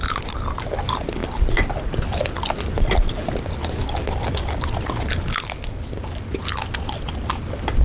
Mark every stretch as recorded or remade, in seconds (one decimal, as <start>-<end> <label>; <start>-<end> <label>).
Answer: 0.0-7.8 recorded